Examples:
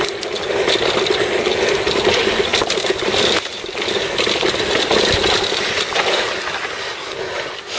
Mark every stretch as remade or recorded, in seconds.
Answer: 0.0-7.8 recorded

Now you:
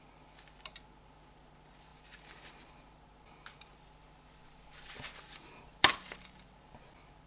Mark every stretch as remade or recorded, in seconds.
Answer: 0.0-7.3 recorded

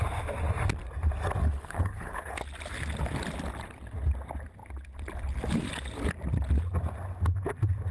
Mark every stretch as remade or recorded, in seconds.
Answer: 0.0-1.4 recorded; 1.4-2.4 remade; 2.4-7.9 recorded

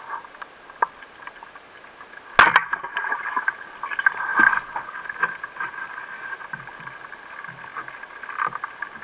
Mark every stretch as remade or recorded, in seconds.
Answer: 0.0-9.0 recorded

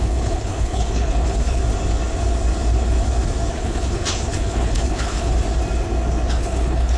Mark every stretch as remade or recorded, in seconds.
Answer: 0.0-1.6 remade; 1.6-3.5 recorded; 3.5-5.3 remade; 5.3-6.3 recorded; 6.3-7.0 remade

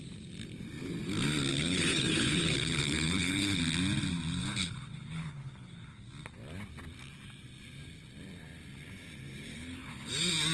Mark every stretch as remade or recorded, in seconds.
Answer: 0.0-1.5 recorded; 1.5-3.6 remade; 3.6-4.4 recorded; 4.4-6.0 remade; 6.0-9.5 recorded; 9.5-10.1 remade; 10.1-10.5 recorded

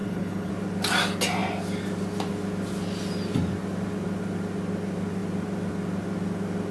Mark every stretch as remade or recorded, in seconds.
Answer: 0.0-0.5 remade; 0.5-6.7 recorded

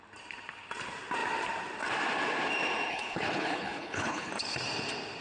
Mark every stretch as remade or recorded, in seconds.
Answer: 0.0-2.9 recorded; 2.9-4.3 remade; 4.3-5.2 recorded